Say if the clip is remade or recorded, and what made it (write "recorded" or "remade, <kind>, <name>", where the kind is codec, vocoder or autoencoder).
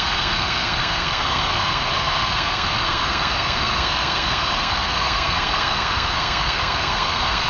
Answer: remade, codec, SNAC